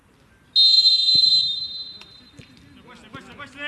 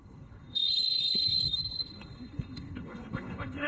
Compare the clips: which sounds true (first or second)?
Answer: first